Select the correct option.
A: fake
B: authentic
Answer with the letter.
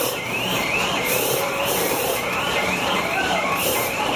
A